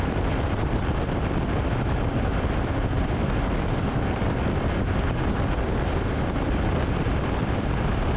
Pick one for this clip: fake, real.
fake